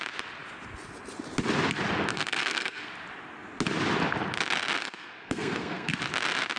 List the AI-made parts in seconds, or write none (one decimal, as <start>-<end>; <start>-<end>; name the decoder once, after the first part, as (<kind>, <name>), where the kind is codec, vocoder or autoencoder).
2.1-2.9 (codec, SNAC); 4.8-5.9